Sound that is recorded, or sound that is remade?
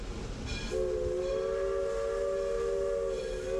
recorded